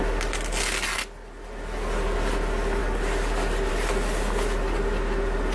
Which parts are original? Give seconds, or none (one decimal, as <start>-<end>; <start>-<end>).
0.0-5.5